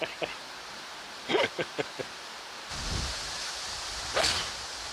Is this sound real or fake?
fake